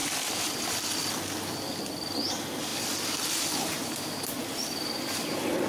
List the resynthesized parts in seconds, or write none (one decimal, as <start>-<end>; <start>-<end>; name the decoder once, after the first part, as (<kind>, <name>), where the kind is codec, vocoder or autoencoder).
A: none